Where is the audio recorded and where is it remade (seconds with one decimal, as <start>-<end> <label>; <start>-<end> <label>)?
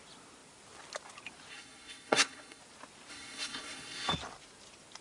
0.0-1.5 recorded; 1.5-2.6 remade; 2.6-3.1 recorded; 3.1-4.1 remade; 4.1-5.0 recorded